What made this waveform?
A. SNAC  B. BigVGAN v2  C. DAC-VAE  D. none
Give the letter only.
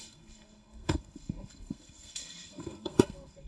A